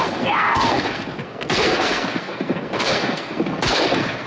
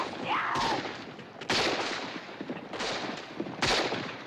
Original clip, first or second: second